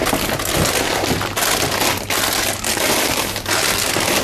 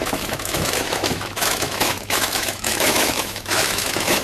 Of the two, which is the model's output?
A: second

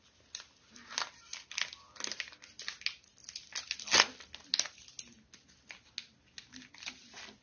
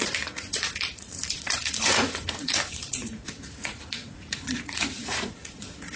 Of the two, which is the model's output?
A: second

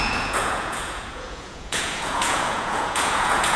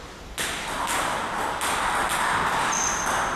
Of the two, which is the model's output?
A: first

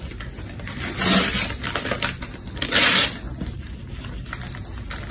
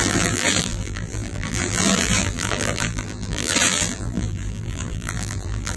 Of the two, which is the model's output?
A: second